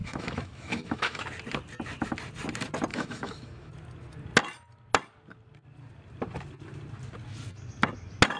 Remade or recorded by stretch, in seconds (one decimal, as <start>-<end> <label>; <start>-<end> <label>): 0.0-1.2 remade; 1.2-2.9 recorded; 2.9-3.7 remade; 3.7-8.4 recorded